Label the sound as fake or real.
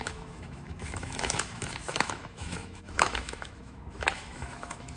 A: fake